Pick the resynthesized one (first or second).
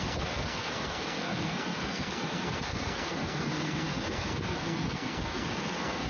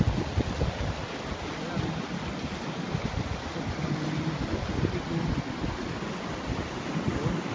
first